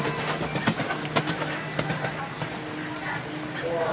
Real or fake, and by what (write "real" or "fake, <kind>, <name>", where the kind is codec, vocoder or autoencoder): real